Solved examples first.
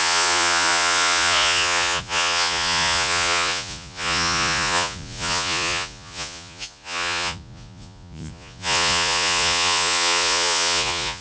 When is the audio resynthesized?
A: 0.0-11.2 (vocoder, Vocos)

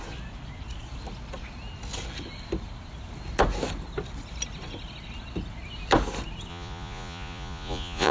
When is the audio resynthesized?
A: 6.5-8.1 (vocoder, Vocos)

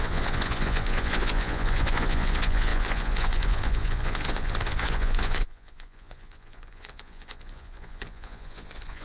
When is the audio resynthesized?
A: 0.0-9.0 (vocoder, Vocos)

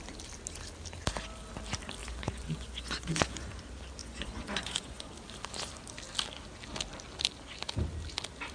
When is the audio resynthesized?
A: 2.0-3.6 (vocoder, Vocos); 4.0-5.1

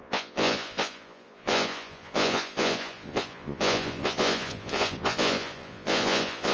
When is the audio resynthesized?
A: 0.0-6.5 (vocoder, Vocos)

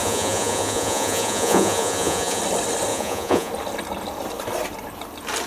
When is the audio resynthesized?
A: 0.0-2.4 (vocoder, Vocos); 2.9-3.5

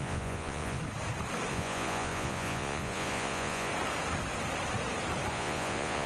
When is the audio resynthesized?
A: 0.0-0.8 (vocoder, Vocos); 1.5-3.7; 5.3-6.1

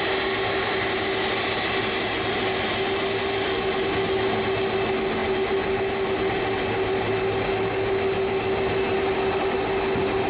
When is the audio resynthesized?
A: none